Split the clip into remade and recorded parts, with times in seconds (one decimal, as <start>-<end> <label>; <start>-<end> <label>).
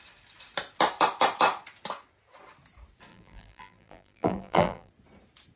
0.0-3.1 recorded; 3.1-4.9 remade; 4.9-5.6 recorded